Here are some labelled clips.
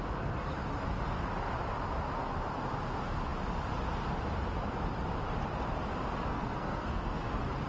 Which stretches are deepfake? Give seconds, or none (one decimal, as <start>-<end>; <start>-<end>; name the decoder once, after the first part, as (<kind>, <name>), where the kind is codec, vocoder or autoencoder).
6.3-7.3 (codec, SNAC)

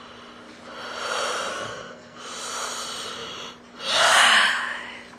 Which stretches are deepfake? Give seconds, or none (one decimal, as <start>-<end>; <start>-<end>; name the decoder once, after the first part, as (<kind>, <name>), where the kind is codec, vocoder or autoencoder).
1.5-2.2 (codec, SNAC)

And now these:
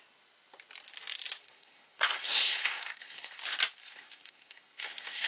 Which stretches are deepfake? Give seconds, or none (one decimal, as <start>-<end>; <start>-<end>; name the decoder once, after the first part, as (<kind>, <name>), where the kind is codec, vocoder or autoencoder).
1.4-3.4 (codec, SNAC); 3.8-5.3

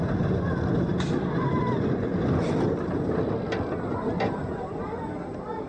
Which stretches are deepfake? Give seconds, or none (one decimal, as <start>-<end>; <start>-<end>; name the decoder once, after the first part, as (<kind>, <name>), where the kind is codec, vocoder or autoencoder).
none

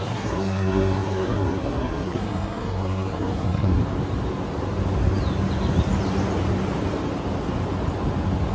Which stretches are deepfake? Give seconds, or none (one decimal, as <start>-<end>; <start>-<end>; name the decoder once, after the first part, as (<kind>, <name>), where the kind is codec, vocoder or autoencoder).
0.0-3.8 (codec, SNAC)